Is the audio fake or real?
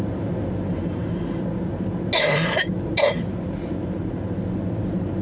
real